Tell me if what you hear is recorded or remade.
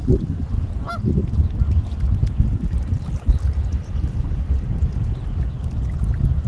recorded